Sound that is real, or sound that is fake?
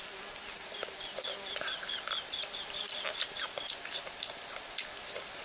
fake